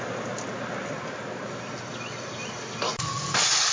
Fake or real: real